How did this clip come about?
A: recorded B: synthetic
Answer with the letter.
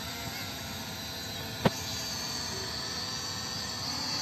A